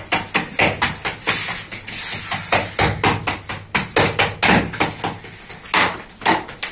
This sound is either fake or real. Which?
real